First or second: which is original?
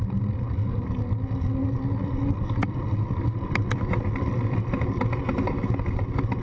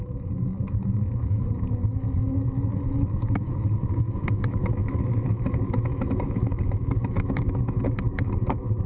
first